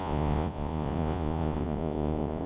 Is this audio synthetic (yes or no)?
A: yes